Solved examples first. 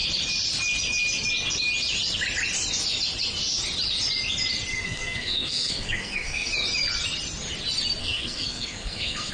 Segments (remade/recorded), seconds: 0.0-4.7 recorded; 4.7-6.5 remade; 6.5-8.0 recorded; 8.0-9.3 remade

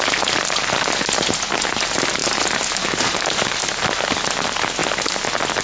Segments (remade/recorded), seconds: 0.0-2.2 recorded; 2.2-4.0 remade; 4.0-5.6 recorded

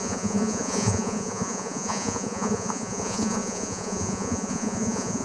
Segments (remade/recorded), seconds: 0.0-5.2 remade

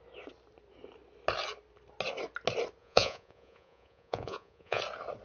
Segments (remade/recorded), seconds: 0.0-2.8 recorded; 2.8-4.8 remade; 4.8-5.2 recorded